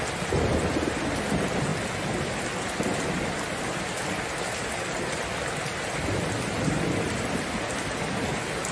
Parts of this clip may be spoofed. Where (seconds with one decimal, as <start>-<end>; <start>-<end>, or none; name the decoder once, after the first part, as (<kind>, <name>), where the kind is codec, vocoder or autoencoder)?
none